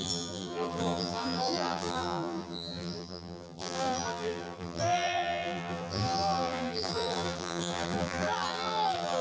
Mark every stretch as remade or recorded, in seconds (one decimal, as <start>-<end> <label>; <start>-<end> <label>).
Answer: 0.0-9.2 remade